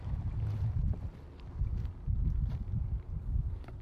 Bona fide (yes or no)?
yes